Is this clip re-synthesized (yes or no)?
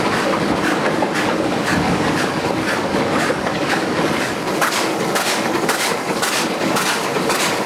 yes